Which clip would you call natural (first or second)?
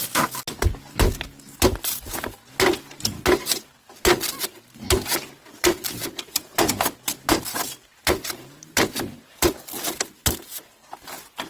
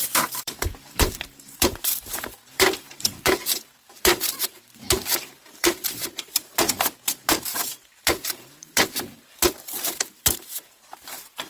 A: first